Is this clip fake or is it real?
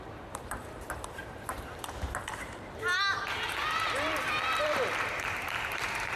fake